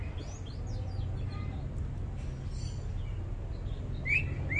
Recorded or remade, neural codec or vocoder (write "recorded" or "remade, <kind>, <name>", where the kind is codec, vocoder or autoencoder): recorded